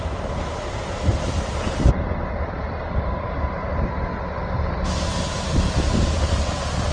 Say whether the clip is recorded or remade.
remade